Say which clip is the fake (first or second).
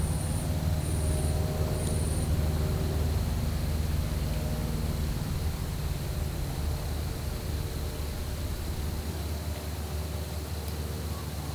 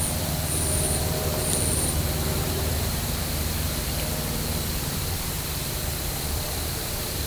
second